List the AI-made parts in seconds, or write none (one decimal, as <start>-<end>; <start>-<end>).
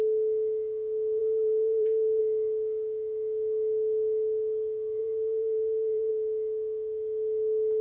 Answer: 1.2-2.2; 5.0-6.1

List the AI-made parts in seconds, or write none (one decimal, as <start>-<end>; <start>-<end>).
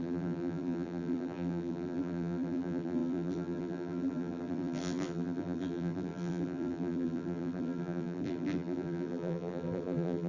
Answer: 0.0-10.3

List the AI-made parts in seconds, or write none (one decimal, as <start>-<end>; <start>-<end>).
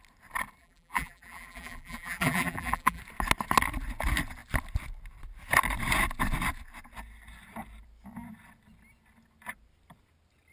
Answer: 0.6-3.0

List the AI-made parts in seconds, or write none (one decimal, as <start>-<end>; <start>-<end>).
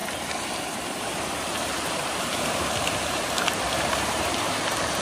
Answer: 0.0-5.0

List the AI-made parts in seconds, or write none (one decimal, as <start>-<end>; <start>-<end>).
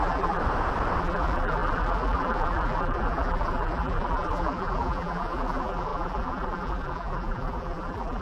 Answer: 0.0-0.4; 1.0-8.2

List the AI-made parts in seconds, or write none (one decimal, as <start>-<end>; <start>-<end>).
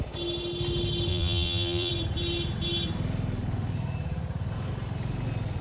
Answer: 1.1-1.9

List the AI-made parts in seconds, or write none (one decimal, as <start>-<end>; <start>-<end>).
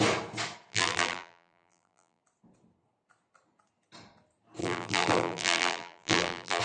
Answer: 0.7-2.2; 4.6-6.6